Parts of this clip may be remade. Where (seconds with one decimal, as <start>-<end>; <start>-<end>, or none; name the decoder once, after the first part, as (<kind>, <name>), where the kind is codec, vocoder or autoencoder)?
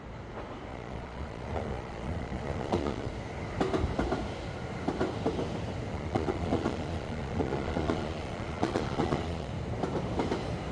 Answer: 0.7-3.1 (vocoder, Vocos); 5.9-9.5